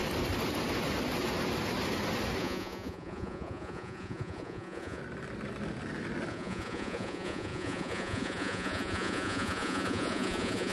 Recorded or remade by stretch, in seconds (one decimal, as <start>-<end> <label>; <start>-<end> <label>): 0.0-2.4 recorded; 2.4-5.0 remade; 5.0-6.3 recorded; 6.3-10.7 remade